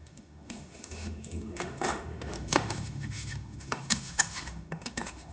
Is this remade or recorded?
remade